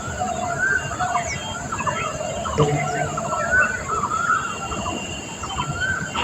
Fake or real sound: real